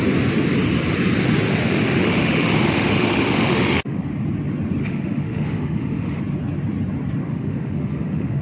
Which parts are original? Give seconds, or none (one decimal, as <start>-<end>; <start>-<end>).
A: 0.0-1.5; 4.1-4.8; 6.2-7.2